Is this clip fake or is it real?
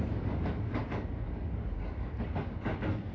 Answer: fake